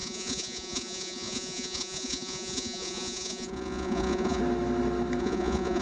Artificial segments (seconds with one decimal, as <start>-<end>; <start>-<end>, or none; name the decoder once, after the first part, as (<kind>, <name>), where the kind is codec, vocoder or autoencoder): 0.0-4.4 (vocoder, Vocos); 5.2-5.8